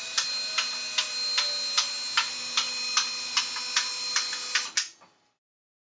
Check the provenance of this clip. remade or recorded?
recorded